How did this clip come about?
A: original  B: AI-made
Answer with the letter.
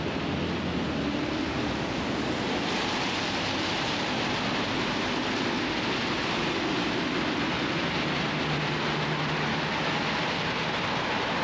A